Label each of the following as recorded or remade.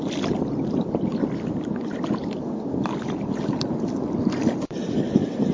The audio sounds recorded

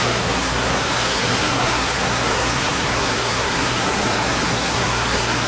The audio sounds remade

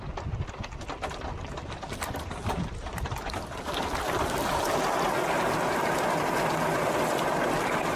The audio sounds recorded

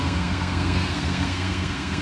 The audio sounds remade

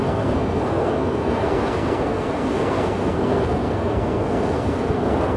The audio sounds remade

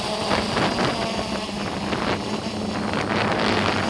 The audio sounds recorded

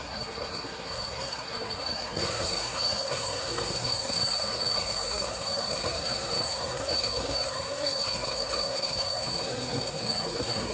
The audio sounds remade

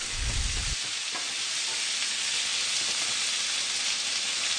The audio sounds recorded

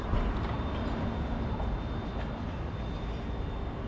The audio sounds recorded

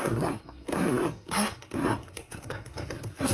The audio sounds remade